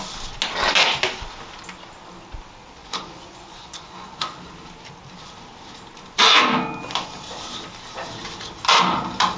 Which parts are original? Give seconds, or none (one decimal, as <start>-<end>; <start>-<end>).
0.0-2.8; 4.5-9.4